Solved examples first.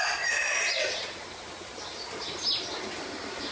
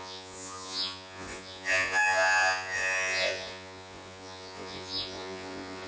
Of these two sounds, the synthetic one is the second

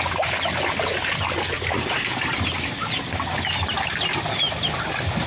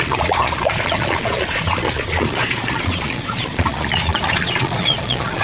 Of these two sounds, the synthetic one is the second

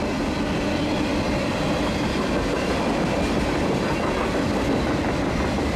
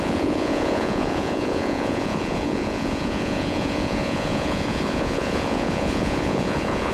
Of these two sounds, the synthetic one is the second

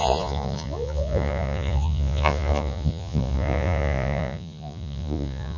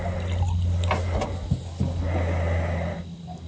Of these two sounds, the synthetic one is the first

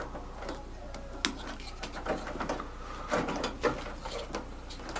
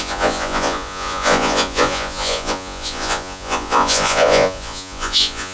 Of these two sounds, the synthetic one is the second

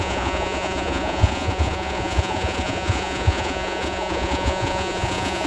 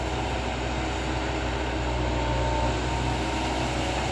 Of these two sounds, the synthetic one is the first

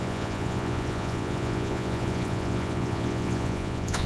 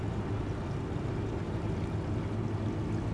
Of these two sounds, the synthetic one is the first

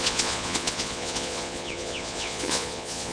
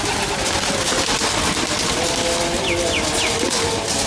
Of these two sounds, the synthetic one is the first